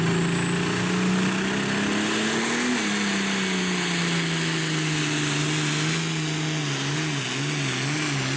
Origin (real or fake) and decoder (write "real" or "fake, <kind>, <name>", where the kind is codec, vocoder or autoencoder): real